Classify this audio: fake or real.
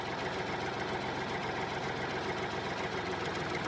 real